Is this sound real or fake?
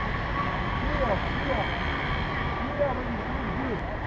real